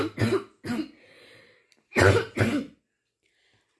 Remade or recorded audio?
recorded